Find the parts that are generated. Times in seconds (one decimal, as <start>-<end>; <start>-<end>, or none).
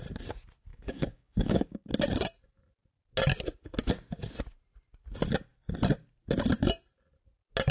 0.7-1.9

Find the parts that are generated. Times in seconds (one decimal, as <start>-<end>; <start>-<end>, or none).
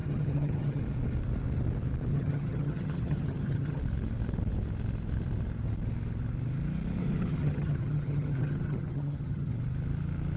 0.0-0.8; 2.1-3.8; 7.0-9.5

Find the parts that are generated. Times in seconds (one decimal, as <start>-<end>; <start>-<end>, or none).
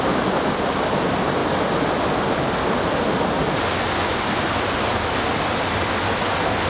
none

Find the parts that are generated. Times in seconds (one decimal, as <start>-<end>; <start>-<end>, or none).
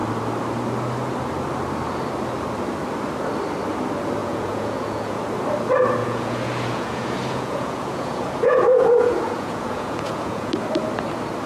4.2-5.2; 6.0-10.5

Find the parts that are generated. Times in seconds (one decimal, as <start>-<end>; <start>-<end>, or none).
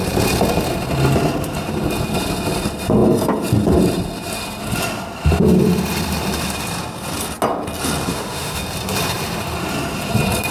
8.1-8.6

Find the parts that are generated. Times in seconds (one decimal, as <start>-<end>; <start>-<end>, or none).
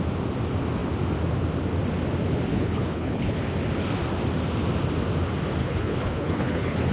2.5-3.4; 5.6-6.9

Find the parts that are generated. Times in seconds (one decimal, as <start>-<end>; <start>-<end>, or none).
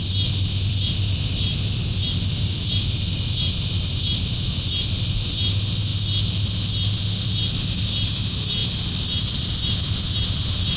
none